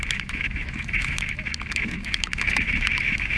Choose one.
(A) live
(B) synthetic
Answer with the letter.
B